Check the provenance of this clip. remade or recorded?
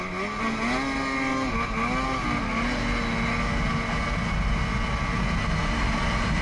recorded